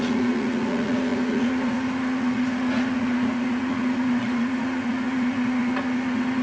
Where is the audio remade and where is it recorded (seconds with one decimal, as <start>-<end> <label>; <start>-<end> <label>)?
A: 0.0-6.4 remade